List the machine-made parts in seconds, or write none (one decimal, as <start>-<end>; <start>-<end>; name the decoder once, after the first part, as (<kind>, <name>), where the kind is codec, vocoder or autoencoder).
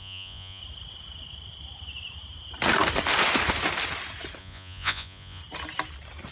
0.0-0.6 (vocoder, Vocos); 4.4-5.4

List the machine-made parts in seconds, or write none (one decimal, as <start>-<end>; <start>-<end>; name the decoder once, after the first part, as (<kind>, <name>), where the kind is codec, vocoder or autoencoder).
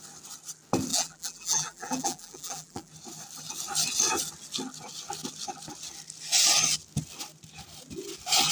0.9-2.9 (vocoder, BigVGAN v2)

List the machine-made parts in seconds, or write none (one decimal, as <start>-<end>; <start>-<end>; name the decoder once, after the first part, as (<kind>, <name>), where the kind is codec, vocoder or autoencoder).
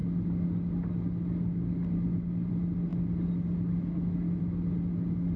none